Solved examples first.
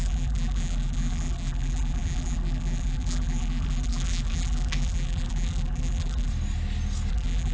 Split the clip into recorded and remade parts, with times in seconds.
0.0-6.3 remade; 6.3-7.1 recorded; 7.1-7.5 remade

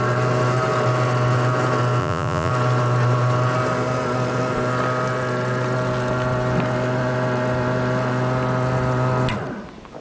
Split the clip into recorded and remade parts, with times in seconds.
0.0-2.0 recorded; 2.0-2.5 remade; 2.5-10.0 recorded

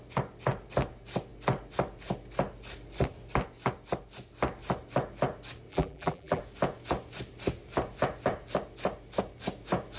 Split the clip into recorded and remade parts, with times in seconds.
0.0-5.7 recorded; 5.7-6.4 remade; 6.4-10.0 recorded

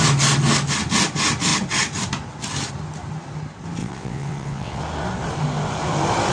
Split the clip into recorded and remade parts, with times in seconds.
0.0-3.8 recorded; 3.8-4.8 remade; 4.8-6.3 recorded

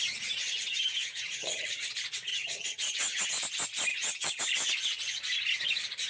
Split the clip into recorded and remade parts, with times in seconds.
0.0-0.4 recorded; 0.4-1.9 remade; 1.9-2.3 recorded; 2.3-3.3 remade; 3.3-3.9 recorded; 3.9-4.4 remade; 4.4-6.1 recorded

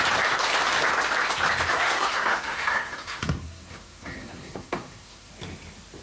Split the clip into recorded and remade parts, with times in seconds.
0.0-1.7 recorded; 1.7-5.3 remade; 5.3-6.0 recorded

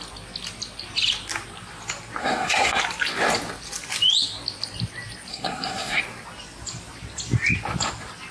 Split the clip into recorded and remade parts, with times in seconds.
0.0-2.2 recorded; 2.2-2.8 remade; 2.8-5.3 recorded; 5.3-6.0 remade; 6.0-8.3 recorded

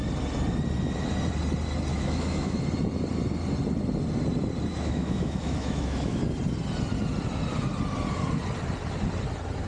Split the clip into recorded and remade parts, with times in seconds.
0.0-1.9 recorded; 1.9-2.6 remade; 2.6-4.7 recorded; 4.7-6.2 remade; 6.2-9.7 recorded